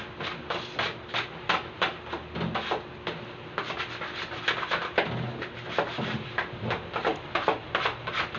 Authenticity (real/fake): real